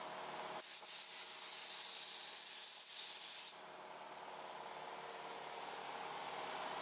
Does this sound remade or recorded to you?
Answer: recorded